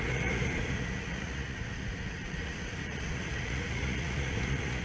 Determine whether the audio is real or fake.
fake